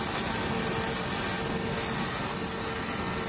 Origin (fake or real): real